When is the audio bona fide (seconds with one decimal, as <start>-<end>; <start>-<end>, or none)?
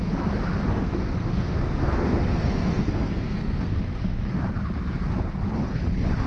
0.0-0.7; 3.7-6.3